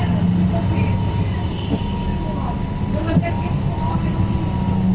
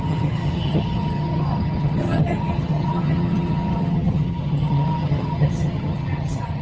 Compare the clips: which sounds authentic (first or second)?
first